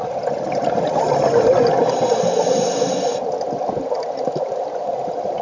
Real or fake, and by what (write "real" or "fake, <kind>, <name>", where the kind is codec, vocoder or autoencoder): real